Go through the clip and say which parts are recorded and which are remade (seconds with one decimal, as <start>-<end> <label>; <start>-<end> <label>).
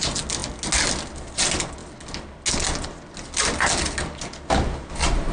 0.0-5.3 recorded